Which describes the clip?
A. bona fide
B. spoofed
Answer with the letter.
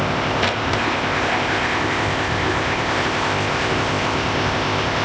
B